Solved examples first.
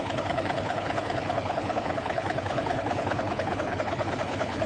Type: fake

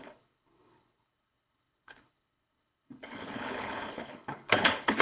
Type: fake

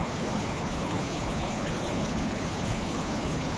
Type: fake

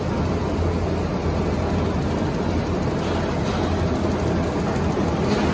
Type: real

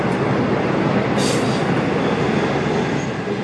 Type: real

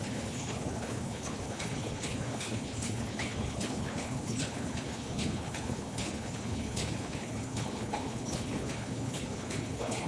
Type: fake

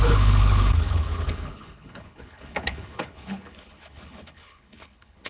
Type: fake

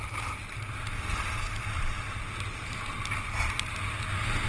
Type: real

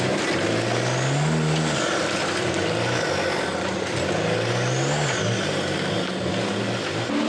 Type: real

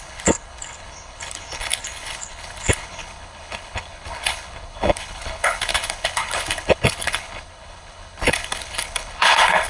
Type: fake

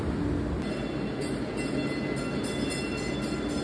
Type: real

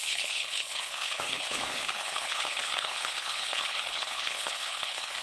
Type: fake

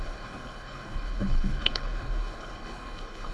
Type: fake